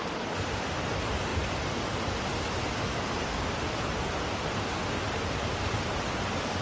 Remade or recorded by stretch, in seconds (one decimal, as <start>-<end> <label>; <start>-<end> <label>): 0.0-6.6 recorded